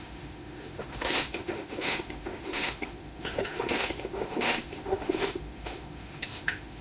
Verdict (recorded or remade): remade